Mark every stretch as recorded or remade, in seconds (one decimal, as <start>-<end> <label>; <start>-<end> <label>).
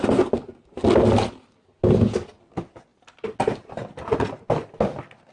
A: 0.0-5.3 recorded